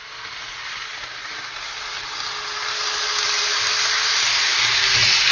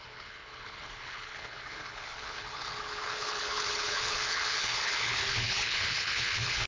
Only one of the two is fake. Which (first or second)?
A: second